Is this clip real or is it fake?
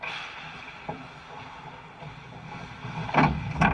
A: real